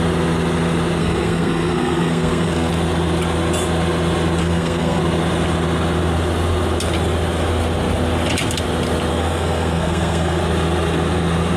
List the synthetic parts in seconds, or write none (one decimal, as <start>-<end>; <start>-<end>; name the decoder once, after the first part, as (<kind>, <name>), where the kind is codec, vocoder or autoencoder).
1.0-2.7 (codec, SNAC); 4.4-5.0; 9.1-10.4